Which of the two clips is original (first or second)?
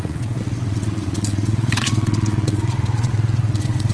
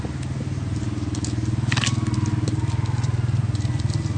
second